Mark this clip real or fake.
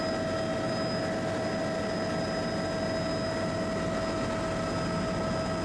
real